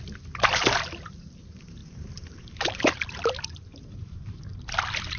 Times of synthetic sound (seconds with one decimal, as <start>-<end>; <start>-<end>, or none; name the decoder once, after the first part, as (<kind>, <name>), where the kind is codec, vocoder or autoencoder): 1.8-2.8 (vocoder, BigVGAN v2); 3.7-4.6